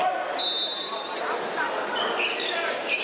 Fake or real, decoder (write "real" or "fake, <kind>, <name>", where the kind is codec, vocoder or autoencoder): real